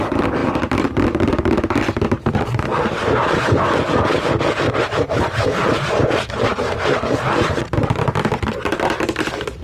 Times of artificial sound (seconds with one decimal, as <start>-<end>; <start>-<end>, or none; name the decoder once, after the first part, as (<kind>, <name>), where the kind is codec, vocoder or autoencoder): 0.0-9.6 (vocoder, BigVGAN v2)